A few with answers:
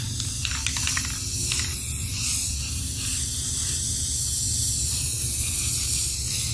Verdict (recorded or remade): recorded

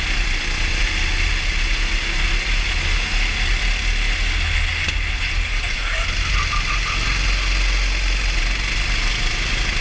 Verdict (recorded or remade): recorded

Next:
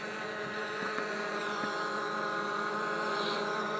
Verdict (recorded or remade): remade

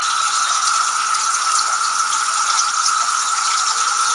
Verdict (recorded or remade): remade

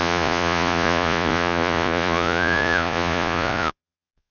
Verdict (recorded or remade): remade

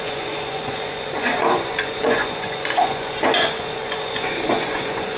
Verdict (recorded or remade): remade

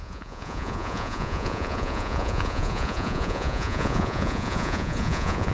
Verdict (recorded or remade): remade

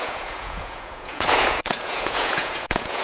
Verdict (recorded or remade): remade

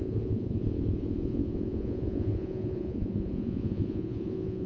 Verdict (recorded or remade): remade